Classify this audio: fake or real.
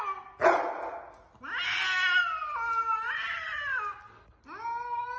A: real